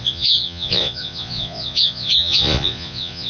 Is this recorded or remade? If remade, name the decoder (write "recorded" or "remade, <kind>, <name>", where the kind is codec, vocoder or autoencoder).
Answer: remade, vocoder, Vocos